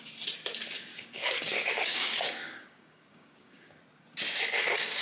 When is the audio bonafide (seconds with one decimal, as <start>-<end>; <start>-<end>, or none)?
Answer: 0.0-0.9; 3.8-5.0